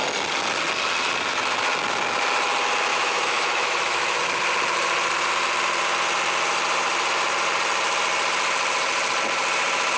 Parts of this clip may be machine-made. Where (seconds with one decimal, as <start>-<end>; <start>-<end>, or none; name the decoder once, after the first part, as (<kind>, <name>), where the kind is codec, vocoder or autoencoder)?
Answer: 2.9-4.2 (autoencoder, DAC-VAE)